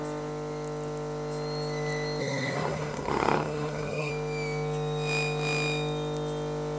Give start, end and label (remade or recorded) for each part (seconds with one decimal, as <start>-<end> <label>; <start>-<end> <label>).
0.0-2.2 recorded; 2.2-4.1 remade; 4.1-6.8 recorded